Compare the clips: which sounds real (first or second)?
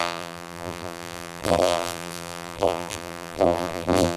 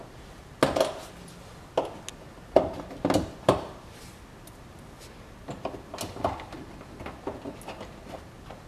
second